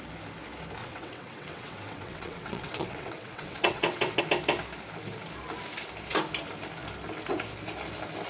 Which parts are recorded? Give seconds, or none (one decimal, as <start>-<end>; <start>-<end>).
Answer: 0.0-0.8; 4.2-8.3